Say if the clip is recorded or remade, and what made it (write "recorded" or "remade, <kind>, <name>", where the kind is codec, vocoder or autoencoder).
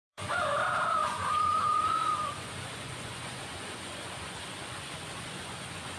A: remade, vocoder, Vocos